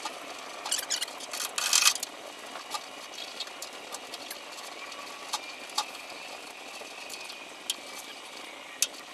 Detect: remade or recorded recorded